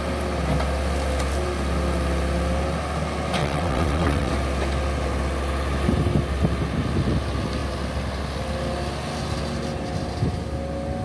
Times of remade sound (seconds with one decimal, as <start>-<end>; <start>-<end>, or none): 3.4-4.3